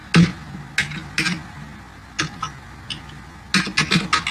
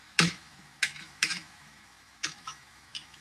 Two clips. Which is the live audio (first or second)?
first